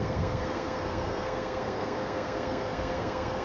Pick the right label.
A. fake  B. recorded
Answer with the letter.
A